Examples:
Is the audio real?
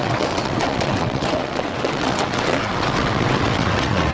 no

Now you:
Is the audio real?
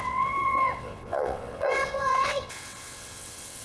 no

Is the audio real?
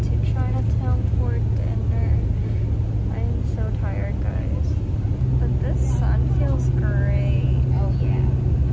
yes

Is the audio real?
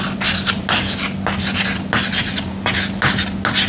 yes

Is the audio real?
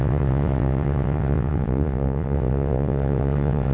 no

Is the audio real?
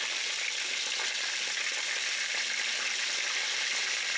yes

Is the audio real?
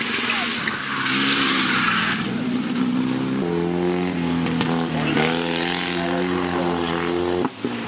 yes